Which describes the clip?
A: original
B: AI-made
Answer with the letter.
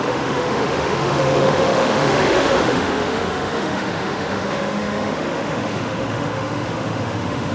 B